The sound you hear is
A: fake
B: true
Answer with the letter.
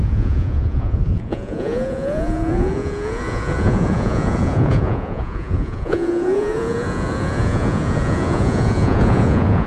A